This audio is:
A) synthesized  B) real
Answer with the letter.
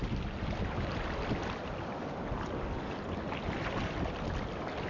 B